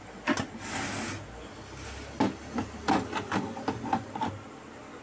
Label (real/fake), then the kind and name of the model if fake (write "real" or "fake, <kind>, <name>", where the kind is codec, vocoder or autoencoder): real